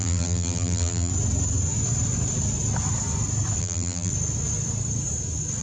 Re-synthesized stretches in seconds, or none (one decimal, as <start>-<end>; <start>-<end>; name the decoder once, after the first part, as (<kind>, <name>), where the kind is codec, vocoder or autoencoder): 0.0-1.1 (vocoder, BigVGAN v2); 3.6-4.1